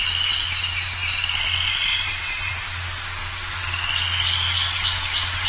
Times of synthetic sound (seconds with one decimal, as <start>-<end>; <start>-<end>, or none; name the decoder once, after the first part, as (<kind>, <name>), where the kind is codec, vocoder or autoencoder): 1.9-2.5 (vocoder, BigVGAN v2)